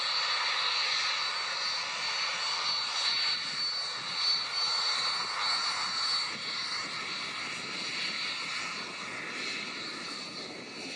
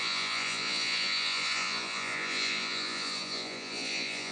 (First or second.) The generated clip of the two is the second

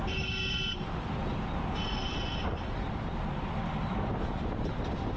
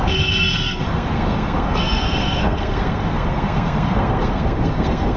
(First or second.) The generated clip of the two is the second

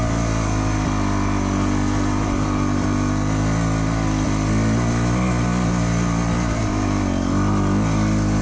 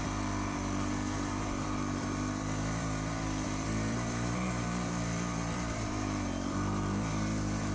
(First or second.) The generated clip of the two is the second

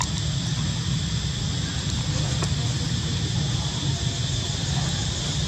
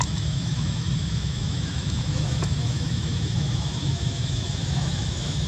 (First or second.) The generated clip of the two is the second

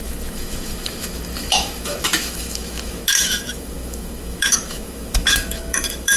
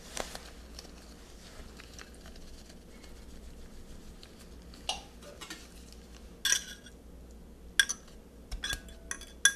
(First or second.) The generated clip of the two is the first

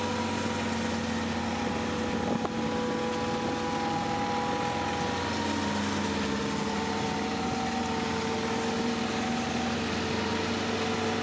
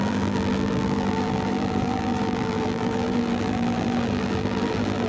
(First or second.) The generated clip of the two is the second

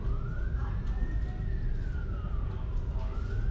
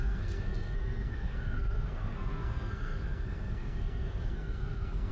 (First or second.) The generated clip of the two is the second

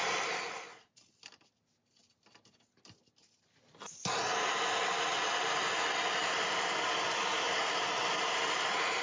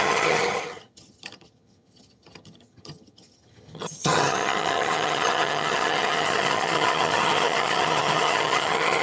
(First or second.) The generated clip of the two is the second